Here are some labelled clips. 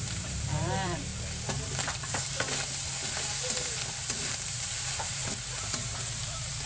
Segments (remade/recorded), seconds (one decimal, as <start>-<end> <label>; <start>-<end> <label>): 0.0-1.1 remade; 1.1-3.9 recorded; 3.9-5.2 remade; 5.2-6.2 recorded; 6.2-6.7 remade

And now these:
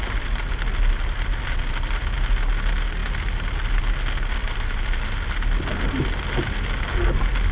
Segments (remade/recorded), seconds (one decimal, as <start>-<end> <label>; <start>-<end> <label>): 0.0-7.5 recorded

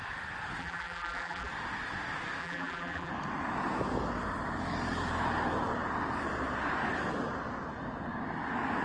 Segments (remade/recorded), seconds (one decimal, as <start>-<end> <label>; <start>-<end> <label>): 0.0-0.6 recorded; 0.6-1.5 remade; 1.5-2.4 recorded; 2.4-3.1 remade; 3.1-8.8 recorded

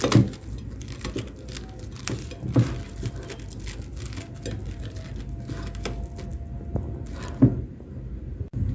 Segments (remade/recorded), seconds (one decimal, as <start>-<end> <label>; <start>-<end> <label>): 0.0-8.7 recorded